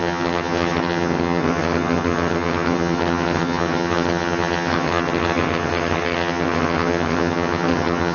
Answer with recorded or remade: remade